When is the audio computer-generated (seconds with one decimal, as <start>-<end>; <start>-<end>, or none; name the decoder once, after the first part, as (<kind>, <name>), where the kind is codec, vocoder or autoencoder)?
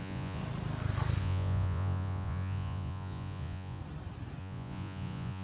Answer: 0.0-0.4 (vocoder, Vocos); 1.2-3.8; 4.4-5.4